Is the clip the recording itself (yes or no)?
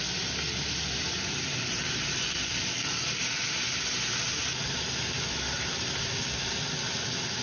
yes